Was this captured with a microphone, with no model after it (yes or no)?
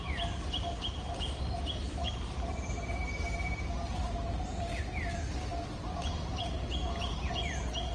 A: yes